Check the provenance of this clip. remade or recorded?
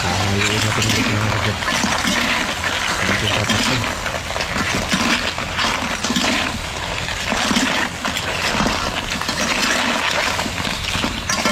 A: recorded